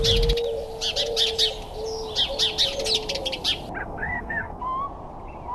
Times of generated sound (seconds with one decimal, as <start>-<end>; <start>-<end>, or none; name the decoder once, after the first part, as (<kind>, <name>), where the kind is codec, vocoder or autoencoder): 3.8-4.6 (codec, SNAC)